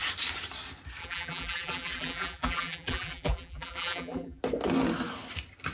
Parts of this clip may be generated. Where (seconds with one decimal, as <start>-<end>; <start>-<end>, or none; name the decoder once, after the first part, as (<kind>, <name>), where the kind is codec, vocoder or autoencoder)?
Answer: 1.0-4.4 (vocoder, BigVGAN v2)